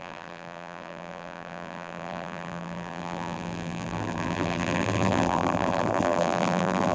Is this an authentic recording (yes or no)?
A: no